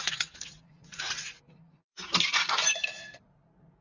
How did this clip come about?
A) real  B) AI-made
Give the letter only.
B